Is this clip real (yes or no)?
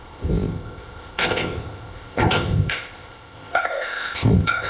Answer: no